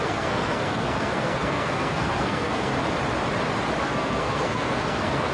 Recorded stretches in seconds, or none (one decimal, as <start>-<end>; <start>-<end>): 2.7-3.8